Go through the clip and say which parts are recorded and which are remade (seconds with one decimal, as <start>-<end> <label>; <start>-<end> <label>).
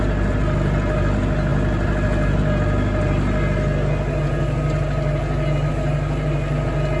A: 0.0-7.0 recorded